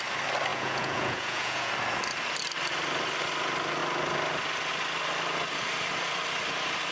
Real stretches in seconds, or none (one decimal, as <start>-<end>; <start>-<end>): 0.0-0.5; 1.7-6.9